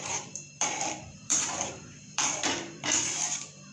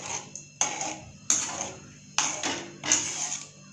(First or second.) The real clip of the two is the second